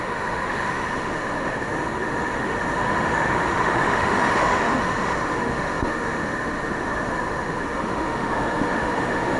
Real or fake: fake